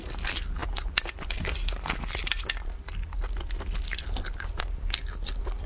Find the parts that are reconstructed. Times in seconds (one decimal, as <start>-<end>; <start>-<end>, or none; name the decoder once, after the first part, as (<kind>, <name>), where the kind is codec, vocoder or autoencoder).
none